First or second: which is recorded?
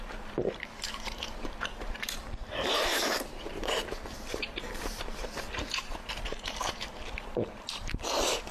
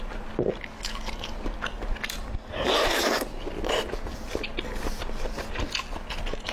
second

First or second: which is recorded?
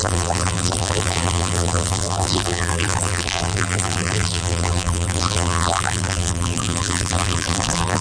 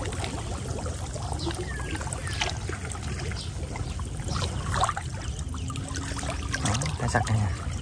second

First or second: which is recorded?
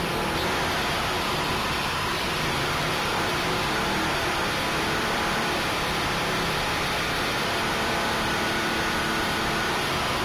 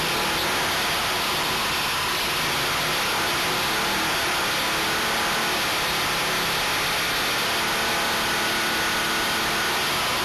second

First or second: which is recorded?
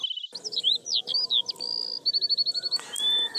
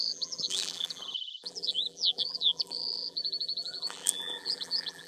first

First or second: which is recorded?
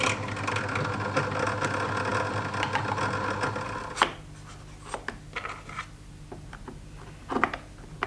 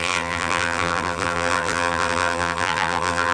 first